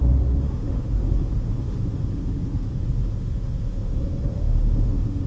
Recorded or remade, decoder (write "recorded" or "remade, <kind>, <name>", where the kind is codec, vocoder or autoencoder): remade, autoencoder, DAC-VAE